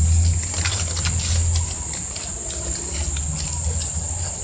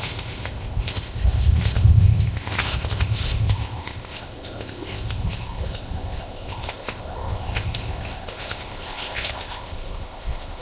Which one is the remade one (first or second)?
second